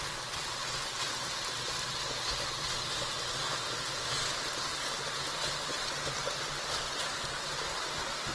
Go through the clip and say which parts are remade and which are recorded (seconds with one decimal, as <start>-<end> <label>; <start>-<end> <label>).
0.0-8.3 recorded